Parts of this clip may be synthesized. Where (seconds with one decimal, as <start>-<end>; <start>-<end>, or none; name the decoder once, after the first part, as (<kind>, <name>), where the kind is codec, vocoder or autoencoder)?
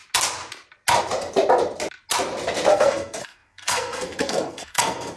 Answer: 2.7-5.2 (codec, SNAC)